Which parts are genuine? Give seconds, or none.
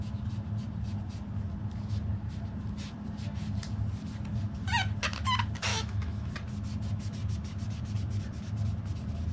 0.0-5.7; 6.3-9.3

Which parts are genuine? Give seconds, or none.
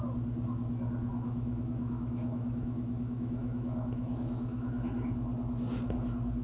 0.0-1.1; 4.9-6.4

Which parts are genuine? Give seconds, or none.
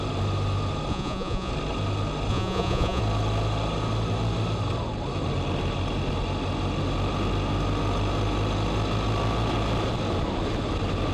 0.0-0.9; 1.5-2.3; 3.0-11.1